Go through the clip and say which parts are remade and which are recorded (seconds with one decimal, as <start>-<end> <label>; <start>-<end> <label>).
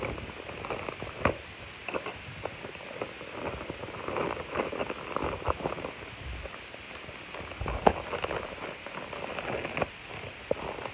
0.0-10.9 recorded